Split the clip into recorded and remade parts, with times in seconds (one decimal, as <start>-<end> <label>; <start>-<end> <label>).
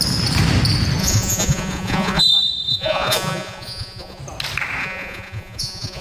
0.0-1.0 recorded; 1.0-2.2 remade; 2.2-2.7 recorded; 2.7-4.2 remade; 4.2-4.8 recorded; 4.8-6.0 remade